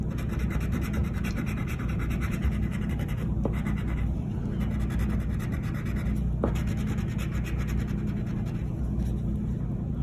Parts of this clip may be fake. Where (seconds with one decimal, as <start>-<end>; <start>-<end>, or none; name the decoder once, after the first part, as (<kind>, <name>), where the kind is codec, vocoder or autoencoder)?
1.0-4.4 (vocoder, BigVGAN v2)